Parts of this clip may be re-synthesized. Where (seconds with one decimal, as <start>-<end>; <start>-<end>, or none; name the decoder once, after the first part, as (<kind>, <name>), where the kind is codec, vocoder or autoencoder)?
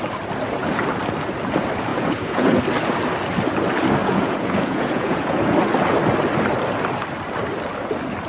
1.9-2.6 (vocoder, Vocos); 4.0-5.4